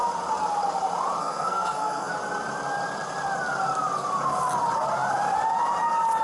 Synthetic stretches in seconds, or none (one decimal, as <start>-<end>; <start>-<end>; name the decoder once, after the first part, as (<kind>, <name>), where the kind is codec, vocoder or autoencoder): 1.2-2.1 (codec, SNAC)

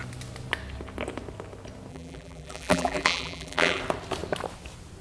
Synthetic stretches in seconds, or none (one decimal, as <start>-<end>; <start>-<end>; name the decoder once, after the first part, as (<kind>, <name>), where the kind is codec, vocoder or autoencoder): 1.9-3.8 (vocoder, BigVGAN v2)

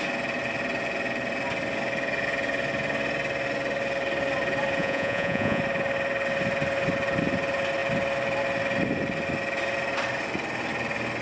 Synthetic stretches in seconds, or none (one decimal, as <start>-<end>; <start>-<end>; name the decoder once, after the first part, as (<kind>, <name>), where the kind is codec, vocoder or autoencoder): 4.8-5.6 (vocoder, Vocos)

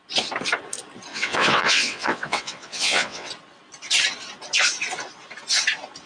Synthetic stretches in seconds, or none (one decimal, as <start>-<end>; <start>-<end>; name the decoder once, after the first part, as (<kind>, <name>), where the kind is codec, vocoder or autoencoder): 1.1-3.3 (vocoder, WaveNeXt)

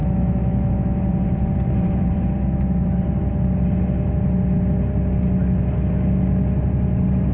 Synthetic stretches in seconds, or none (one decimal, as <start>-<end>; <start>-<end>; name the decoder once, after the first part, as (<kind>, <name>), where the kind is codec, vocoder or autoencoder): 0.0-0.7 (autoencoder, DAC-VAE)